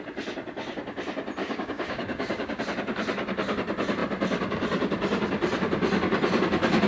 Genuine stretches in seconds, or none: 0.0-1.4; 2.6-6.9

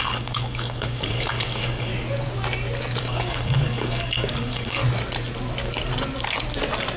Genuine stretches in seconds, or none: 1.9-3.0; 4.8-7.0